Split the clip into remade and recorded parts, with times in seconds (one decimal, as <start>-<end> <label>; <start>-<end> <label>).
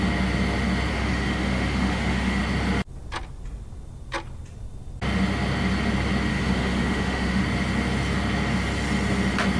0.0-0.9 recorded; 0.9-2.4 remade; 2.4-6.3 recorded; 6.3-7.4 remade; 7.4-9.6 recorded